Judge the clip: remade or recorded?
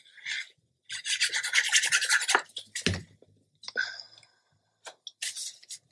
recorded